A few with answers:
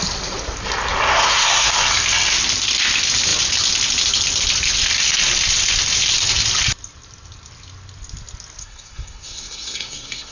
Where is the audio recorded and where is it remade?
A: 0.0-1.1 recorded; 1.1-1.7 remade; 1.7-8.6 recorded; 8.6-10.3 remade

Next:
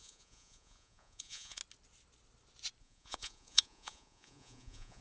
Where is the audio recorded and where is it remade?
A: 0.0-1.6 remade; 1.6-2.8 recorded; 2.8-5.0 remade

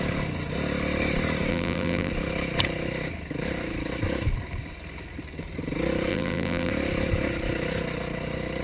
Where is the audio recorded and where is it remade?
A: 0.0-1.5 recorded; 1.5-2.1 remade; 2.1-6.1 recorded; 6.1-6.7 remade; 6.7-8.6 recorded

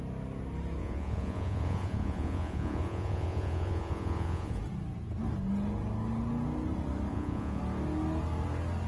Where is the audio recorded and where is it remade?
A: 0.0-0.8 recorded; 0.8-4.6 remade; 4.6-7.1 recorded; 7.1-7.6 remade; 7.6-8.9 recorded

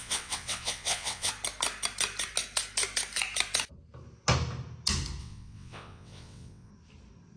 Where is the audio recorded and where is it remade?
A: 0.0-1.3 remade; 1.3-5.2 recorded; 5.2-6.7 remade; 6.7-7.4 recorded

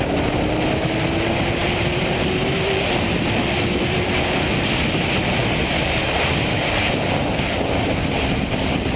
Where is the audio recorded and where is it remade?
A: 0.0-1.6 recorded; 1.6-3.4 remade; 3.4-9.0 recorded

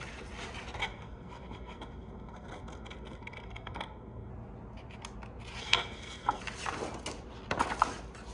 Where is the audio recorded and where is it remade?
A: 0.0-0.8 recorded; 0.8-4.3 remade; 4.3-5.6 recorded; 5.6-6.4 remade; 6.4-8.3 recorded

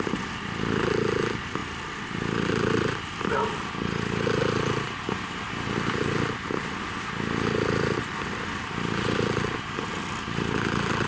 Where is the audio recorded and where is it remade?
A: 0.0-11.1 recorded